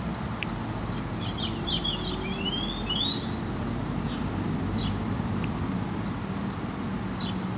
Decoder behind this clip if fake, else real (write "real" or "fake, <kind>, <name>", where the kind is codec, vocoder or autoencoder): real